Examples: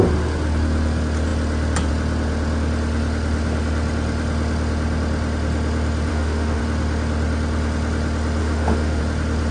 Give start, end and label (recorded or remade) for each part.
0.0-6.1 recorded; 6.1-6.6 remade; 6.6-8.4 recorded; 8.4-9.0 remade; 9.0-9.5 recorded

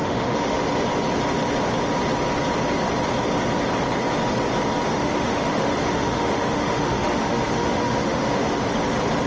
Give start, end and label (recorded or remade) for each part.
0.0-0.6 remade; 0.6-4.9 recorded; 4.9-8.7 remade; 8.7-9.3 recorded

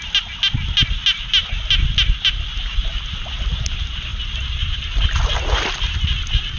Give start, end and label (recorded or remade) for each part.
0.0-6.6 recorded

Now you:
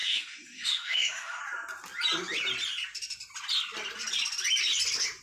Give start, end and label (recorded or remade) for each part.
0.0-1.4 remade; 1.4-5.2 recorded

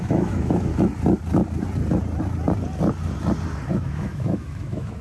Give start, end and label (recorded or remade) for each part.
0.0-0.7 remade; 0.7-3.7 recorded; 3.7-5.0 remade

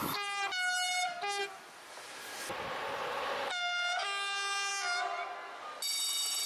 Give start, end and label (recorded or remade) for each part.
0.0-6.5 recorded

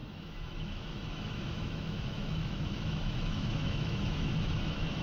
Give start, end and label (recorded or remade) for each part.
0.0-5.0 remade